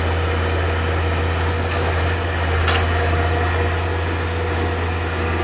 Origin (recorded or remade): recorded